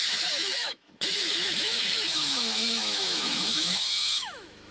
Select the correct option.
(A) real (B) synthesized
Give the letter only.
B